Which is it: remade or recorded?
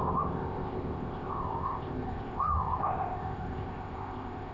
remade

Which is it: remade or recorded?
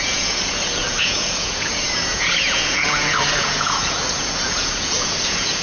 remade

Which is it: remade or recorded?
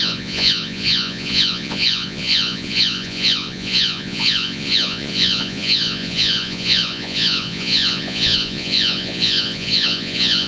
remade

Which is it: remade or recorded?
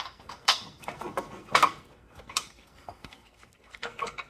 remade